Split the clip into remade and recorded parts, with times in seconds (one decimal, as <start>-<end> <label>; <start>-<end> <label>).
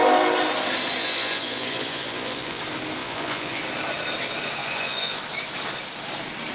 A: 0.0-1.0 recorded; 1.0-2.6 remade; 2.6-3.0 recorded; 3.0-3.6 remade; 3.6-4.6 recorded; 4.6-5.2 remade; 5.2-6.5 recorded